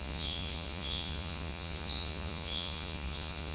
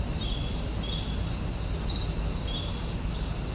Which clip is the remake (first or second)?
first